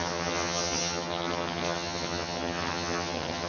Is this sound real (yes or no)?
no